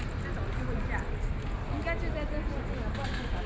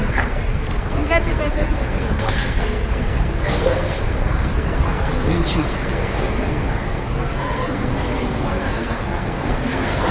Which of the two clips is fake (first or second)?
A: second